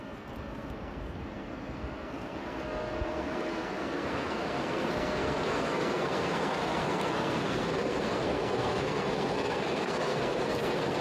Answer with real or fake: fake